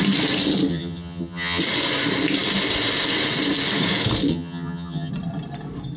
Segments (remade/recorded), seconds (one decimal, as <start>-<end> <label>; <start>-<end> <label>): 0.0-0.7 recorded; 0.7-1.6 remade; 1.6-4.3 recorded; 4.3-5.1 remade; 5.1-6.0 recorded